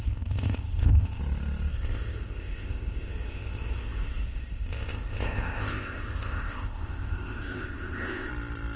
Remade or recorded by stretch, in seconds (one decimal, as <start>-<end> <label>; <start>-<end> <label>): 0.0-1.2 remade; 1.2-1.7 recorded; 1.7-8.3 remade; 8.3-8.8 recorded